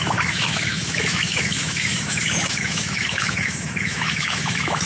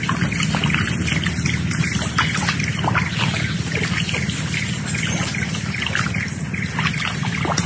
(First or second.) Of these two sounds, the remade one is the first